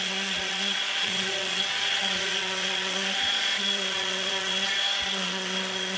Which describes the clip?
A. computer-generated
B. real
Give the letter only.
A